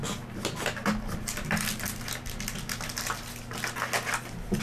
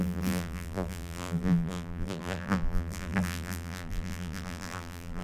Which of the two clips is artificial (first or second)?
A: second